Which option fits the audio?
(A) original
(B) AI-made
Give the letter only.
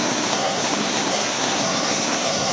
B